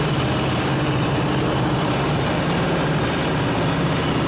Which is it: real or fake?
real